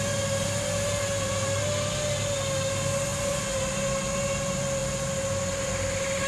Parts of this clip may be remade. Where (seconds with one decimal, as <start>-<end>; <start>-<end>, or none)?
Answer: none